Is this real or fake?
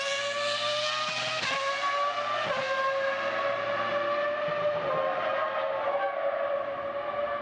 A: real